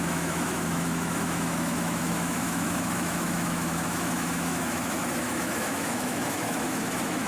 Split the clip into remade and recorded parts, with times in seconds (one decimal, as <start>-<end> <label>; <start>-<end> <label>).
0.0-7.3 remade